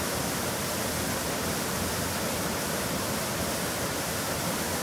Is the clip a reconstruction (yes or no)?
no